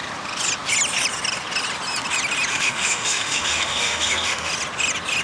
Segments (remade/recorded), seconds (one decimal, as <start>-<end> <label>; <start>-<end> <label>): 0.0-2.5 recorded; 2.5-4.5 remade; 4.5-5.2 recorded